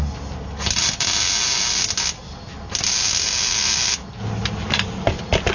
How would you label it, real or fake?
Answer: real